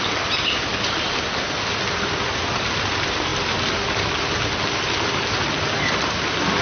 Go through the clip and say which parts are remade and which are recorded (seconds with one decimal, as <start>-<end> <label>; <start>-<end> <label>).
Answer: 0.0-6.6 recorded